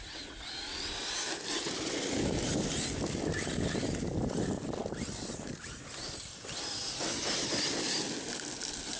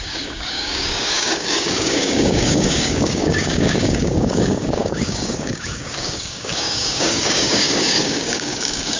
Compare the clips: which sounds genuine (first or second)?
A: first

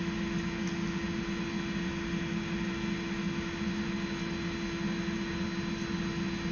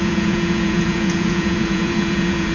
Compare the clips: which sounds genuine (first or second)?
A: first